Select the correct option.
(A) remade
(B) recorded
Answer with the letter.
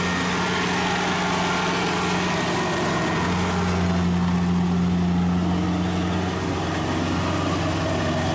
B